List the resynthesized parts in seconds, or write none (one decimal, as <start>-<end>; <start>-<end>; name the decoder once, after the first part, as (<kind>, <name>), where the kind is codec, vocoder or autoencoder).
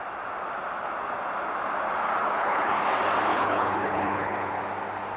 2.2-2.8 (codec, HILCodec); 3.3-4.6